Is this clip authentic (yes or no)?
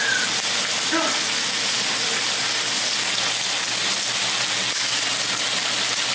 yes